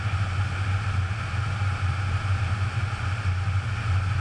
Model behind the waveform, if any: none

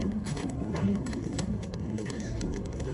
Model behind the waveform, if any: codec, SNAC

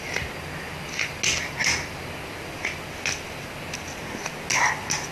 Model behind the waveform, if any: none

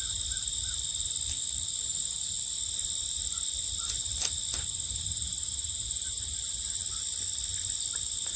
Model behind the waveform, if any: none